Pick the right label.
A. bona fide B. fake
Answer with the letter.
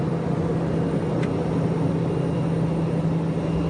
A